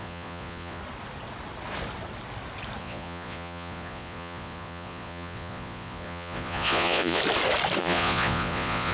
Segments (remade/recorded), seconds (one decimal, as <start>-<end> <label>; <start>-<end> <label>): 0.0-0.8 remade; 0.8-2.8 recorded; 2.8-7.2 remade; 7.2-7.8 recorded; 7.8-8.9 remade

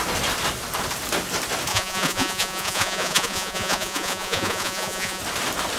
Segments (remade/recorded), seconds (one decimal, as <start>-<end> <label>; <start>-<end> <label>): 0.0-1.7 recorded; 1.7-5.2 remade; 5.2-5.8 recorded

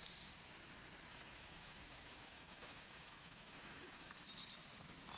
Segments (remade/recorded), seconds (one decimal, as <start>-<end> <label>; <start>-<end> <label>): 0.0-1.1 recorded; 1.1-4.1 remade; 4.1-5.2 recorded

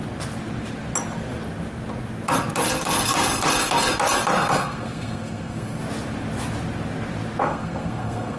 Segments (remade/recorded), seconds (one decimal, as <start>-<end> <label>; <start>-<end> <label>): 0.0-4.5 recorded; 4.5-5.8 remade; 5.8-7.4 recorded; 7.4-8.4 remade

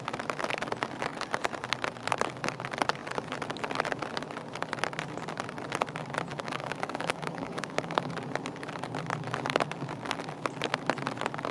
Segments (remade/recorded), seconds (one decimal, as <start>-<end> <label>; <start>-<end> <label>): 0.0-6.3 recorded; 6.3-8.1 remade; 8.1-11.5 recorded

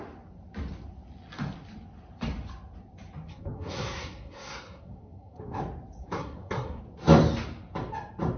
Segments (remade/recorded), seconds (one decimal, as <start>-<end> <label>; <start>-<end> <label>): 0.0-3.3 recorded; 3.3-5.6 remade; 5.6-6.0 recorded; 6.0-6.8 remade; 6.8-8.4 recorded